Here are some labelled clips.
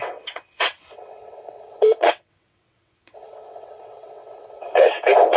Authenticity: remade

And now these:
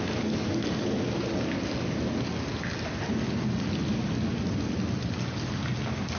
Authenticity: recorded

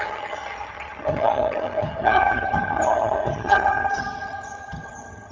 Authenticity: remade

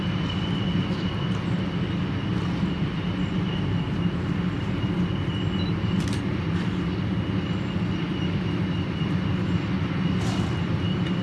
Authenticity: recorded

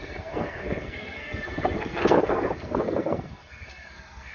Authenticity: remade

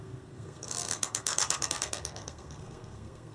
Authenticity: remade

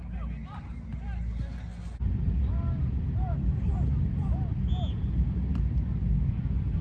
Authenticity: recorded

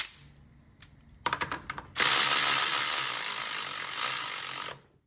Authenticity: recorded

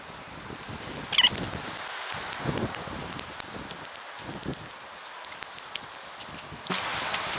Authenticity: recorded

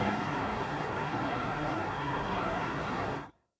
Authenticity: remade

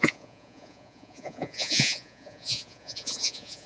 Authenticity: remade